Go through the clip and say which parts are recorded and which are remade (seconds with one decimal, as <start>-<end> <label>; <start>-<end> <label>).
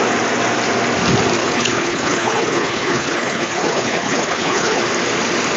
0.0-1.4 recorded; 1.4-4.8 remade; 4.8-5.6 recorded